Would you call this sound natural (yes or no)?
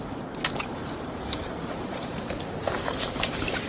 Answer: no